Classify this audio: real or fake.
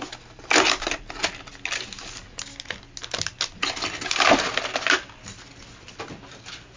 real